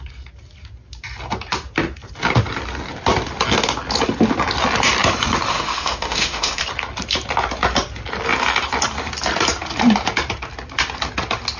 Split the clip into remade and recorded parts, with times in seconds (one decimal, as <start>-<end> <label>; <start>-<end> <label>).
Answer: 0.0-5.5 recorded; 5.5-6.6 remade; 6.6-11.6 recorded